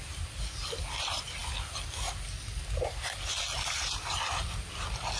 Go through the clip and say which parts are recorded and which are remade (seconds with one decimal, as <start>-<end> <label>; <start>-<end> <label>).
0.0-5.2 recorded